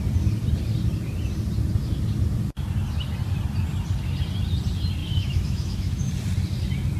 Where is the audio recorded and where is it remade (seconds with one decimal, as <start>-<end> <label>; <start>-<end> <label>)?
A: 0.0-5.0 recorded; 5.0-6.1 remade; 6.1-7.0 recorded